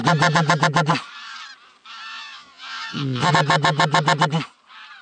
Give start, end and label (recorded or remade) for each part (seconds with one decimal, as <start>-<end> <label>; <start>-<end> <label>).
0.0-2.1 recorded; 2.1-3.3 remade; 3.3-5.0 recorded